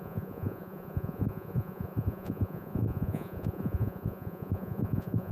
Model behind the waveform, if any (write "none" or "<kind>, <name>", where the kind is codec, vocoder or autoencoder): vocoder, Vocos